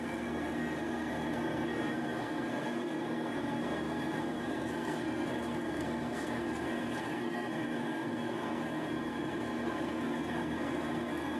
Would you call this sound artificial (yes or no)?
yes